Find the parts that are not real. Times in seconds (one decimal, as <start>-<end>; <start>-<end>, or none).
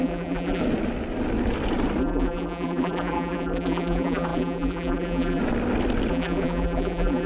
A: 0.0-0.6; 2.0-5.4; 6.1-7.3